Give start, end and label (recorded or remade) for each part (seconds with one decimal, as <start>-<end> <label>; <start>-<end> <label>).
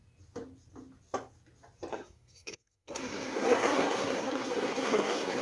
0.0-1.9 recorded; 1.9-5.4 remade